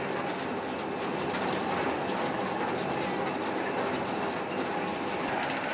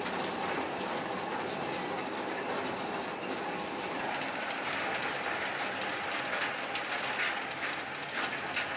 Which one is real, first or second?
first